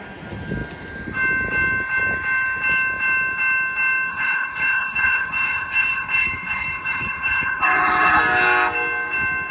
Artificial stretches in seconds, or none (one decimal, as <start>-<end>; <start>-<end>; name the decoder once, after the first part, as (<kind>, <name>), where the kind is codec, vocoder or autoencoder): 4.1-8.2 (codec, HILCodec)